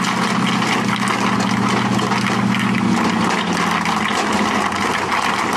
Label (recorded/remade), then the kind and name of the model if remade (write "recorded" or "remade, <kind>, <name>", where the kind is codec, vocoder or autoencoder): recorded